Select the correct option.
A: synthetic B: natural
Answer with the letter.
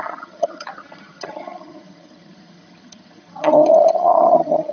A